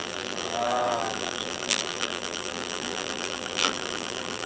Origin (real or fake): fake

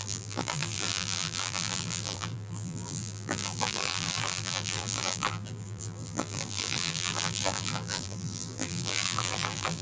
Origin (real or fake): fake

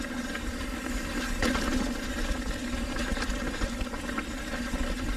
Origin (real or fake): fake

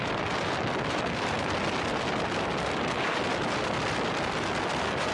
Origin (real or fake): fake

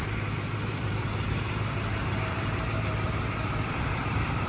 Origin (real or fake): fake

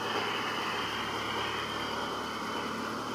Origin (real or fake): real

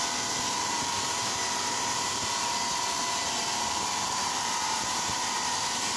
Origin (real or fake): fake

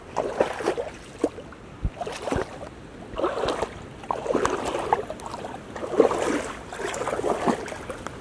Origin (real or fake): real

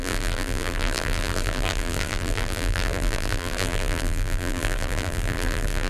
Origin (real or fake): fake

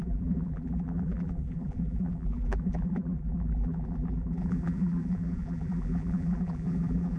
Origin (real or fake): fake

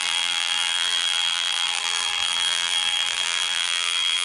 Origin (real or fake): fake